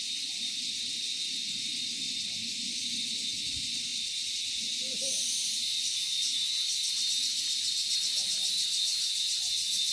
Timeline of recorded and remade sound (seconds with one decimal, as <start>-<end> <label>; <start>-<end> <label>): 0.0-9.9 recorded